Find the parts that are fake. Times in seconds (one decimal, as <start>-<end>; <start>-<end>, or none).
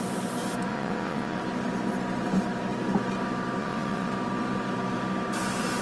0.7-1.4; 3.6-4.1